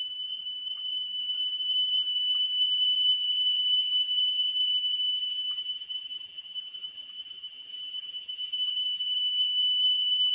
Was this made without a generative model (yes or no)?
no